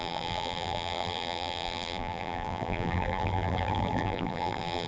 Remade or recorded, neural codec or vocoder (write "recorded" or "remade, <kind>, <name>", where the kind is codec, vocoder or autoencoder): remade, vocoder, BigVGAN v2